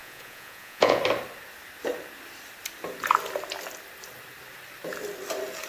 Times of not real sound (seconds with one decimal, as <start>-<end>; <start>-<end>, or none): 0.0-1.0